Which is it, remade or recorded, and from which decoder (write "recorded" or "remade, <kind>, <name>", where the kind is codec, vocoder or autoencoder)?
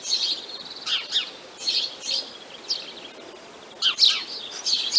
recorded